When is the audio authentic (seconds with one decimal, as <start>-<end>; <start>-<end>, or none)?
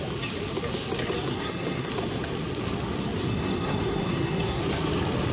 0.0-1.3; 1.9-3.3; 4.6-5.3